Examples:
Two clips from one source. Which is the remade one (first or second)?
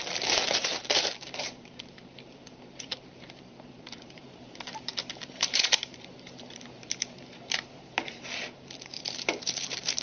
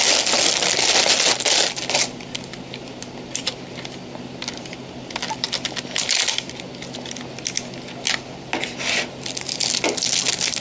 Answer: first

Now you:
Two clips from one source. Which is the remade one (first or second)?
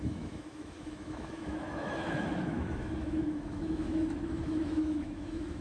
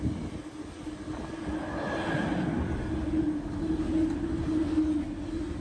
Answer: first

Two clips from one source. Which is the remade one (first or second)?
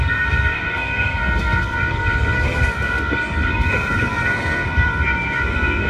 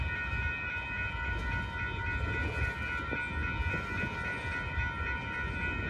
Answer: first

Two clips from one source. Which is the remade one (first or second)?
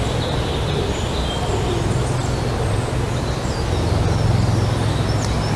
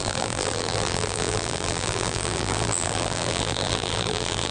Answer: second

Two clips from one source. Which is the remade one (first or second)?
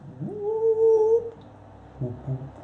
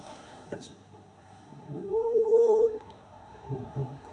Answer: second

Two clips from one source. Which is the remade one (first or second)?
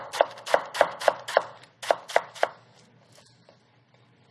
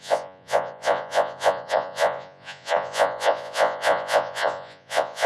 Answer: second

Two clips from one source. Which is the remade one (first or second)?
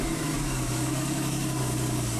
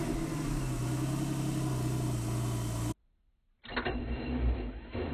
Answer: first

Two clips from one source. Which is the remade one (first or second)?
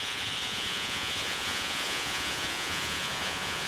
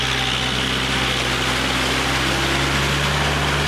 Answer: first